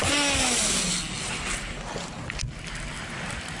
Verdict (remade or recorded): recorded